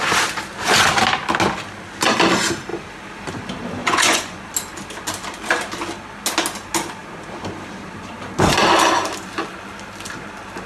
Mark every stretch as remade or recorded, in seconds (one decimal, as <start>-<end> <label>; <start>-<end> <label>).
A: 0.0-3.8 recorded; 3.8-4.5 remade; 4.5-10.7 recorded